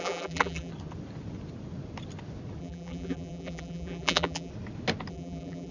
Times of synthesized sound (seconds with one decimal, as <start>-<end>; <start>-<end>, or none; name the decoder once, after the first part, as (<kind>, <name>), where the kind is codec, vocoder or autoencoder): 0.0-0.7 (vocoder, BigVGAN v2); 2.6-4.5; 5.1-5.7